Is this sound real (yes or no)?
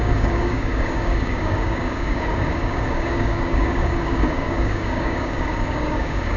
no